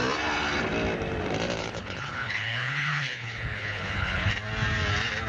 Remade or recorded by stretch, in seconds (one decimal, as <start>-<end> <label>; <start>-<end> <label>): 0.0-1.6 recorded; 1.6-4.3 remade; 4.3-5.3 recorded